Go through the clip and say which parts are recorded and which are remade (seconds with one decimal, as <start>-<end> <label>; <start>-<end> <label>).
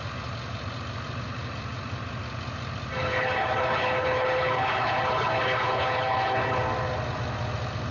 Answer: 0.0-3.0 recorded; 3.0-6.6 remade; 6.6-7.9 recorded